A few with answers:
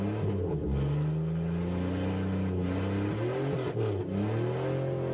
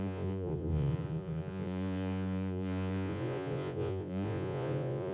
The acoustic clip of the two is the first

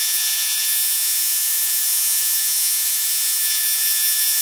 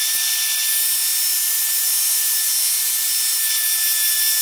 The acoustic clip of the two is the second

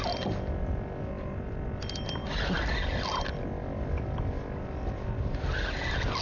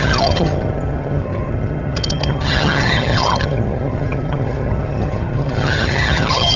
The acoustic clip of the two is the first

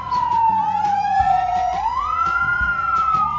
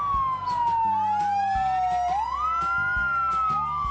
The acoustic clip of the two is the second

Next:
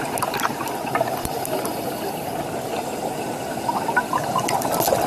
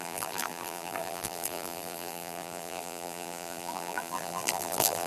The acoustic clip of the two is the first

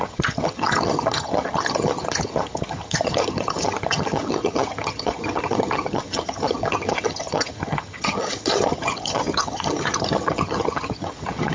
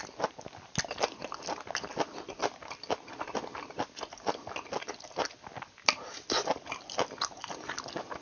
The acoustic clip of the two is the second